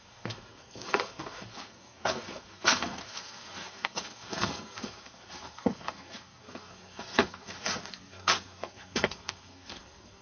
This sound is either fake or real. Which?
fake